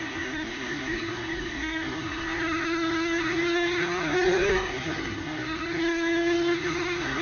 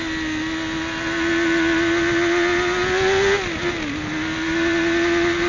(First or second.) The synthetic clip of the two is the first